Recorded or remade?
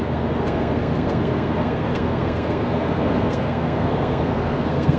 remade